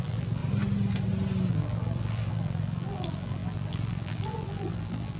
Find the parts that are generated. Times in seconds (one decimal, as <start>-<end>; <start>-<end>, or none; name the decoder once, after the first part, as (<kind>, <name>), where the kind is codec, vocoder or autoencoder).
0.0-0.4 (vocoder, BigVGAN v2); 1.5-5.2